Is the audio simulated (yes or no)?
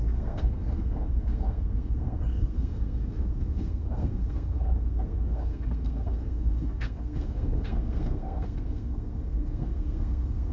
yes